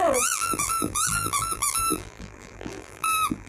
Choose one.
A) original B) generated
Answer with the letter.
B